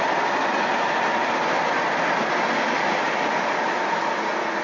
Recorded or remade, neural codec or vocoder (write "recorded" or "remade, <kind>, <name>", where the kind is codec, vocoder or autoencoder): recorded